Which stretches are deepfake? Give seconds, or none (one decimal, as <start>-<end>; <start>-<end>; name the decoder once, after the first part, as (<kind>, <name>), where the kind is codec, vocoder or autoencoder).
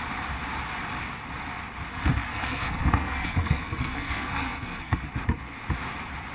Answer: 1.9-5.1 (codec, SNAC)